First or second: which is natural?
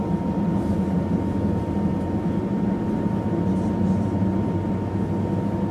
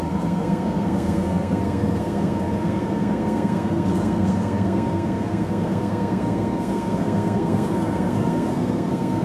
first